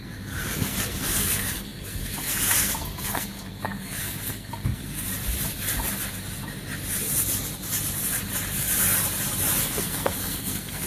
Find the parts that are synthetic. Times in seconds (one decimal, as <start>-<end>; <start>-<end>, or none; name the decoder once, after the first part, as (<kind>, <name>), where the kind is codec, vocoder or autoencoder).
0.0-5.1 (codec, SNAC); 9.6-10.9